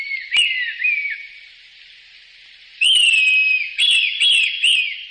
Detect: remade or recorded recorded